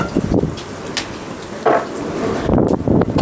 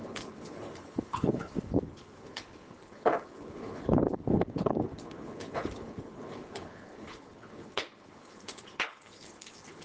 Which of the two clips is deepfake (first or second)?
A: second